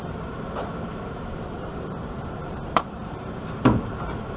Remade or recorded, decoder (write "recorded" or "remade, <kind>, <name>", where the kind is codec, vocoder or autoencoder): remade, vocoder, BigVGAN v2